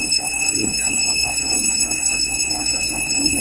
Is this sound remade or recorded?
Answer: remade